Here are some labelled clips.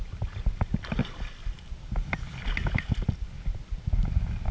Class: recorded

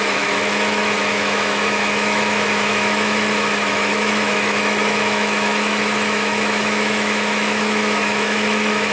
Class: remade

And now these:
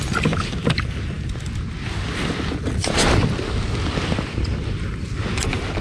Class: recorded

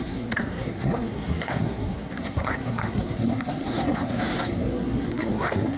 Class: remade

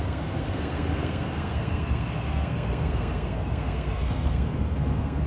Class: remade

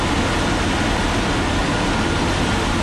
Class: recorded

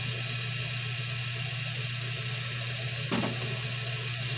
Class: recorded